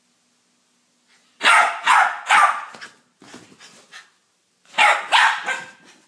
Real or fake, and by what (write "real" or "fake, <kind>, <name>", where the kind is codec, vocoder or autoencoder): real